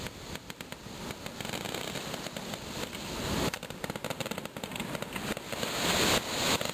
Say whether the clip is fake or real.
real